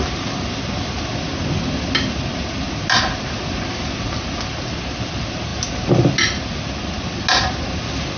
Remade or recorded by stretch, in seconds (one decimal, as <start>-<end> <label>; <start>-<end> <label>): 0.0-8.2 recorded